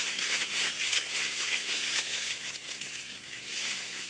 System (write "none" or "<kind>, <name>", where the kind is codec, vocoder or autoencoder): codec, SNAC